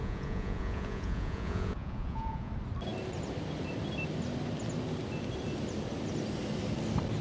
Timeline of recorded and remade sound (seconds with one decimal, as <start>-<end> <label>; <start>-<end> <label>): 0.0-2.5 remade; 2.5-7.2 recorded